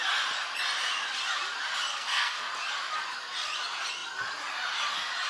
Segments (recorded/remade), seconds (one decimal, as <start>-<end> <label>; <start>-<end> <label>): 0.0-1.9 recorded; 1.9-2.5 remade; 2.5-5.3 recorded